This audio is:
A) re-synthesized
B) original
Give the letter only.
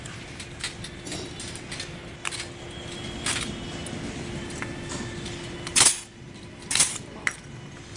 B